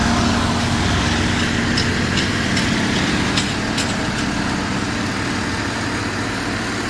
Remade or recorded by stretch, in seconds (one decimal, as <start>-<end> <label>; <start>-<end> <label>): 0.0-1.4 remade; 1.4-6.9 recorded

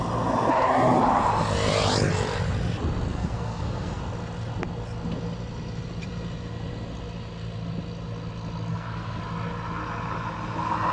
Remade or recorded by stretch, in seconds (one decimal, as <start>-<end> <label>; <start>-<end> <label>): 0.0-3.1 recorded; 3.1-4.0 remade; 4.0-8.7 recorded; 8.7-9.2 remade; 9.2-10.9 recorded

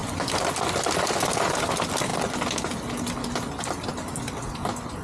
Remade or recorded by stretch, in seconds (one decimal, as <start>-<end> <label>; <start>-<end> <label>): 0.0-5.0 recorded

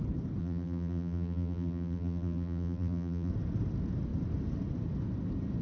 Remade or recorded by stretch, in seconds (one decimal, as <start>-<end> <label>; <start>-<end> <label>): 0.0-0.4 recorded; 0.4-3.3 remade; 3.3-5.6 recorded

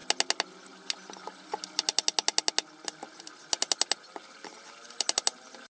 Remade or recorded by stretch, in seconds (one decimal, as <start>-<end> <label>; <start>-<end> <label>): 0.0-5.7 recorded

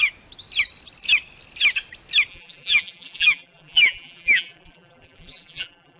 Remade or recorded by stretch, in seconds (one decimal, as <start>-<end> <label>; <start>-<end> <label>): 0.0-2.3 recorded; 2.3-6.0 remade

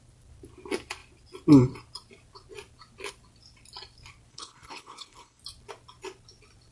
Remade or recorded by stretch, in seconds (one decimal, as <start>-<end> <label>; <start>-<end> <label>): 0.0-4.3 recorded; 4.3-5.4 remade; 5.4-6.7 recorded